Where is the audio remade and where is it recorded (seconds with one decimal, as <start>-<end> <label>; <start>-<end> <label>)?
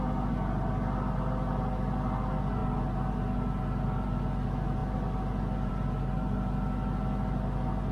0.0-7.9 recorded